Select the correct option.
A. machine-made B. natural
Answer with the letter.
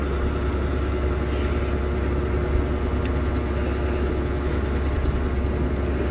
B